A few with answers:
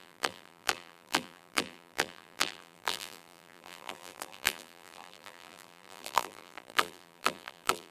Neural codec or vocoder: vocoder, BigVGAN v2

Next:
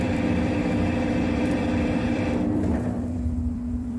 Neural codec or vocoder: vocoder, BigVGAN v2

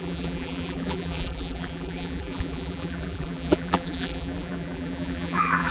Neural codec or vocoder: vocoder, BigVGAN v2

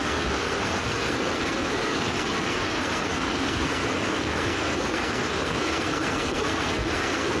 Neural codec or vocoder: codec, SNAC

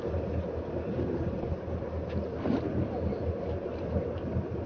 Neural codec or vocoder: none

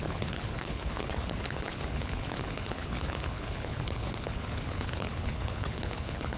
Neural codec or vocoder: codec, HILCodec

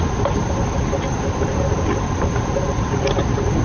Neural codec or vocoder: none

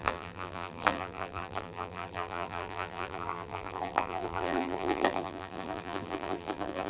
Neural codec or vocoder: vocoder, BigVGAN v2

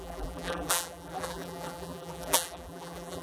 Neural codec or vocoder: vocoder, BigVGAN v2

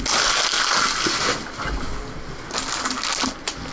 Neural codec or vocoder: none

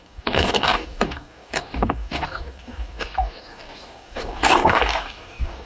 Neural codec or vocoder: codec, DAC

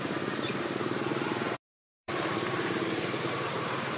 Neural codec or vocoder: vocoder, BigVGAN v2